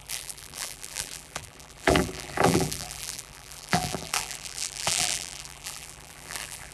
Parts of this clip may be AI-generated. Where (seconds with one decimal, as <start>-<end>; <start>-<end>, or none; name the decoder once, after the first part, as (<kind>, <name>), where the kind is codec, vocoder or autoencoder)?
0.0-6.7 (vocoder, BigVGAN v2)